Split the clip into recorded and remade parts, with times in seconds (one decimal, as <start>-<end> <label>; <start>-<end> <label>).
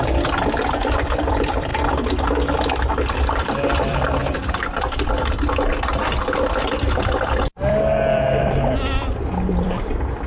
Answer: 0.0-1.7 remade; 1.7-3.4 recorded; 3.4-4.2 remade; 4.2-6.6 recorded; 6.6-10.3 remade